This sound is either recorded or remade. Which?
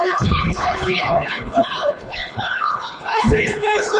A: remade